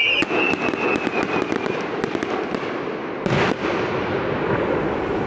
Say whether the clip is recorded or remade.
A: recorded